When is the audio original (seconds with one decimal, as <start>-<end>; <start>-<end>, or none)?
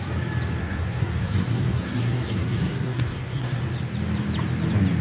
0.0-0.6; 3.6-5.0